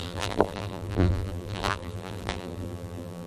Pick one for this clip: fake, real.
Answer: fake